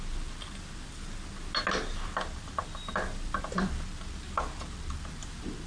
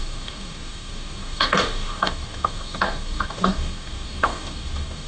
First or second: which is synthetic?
second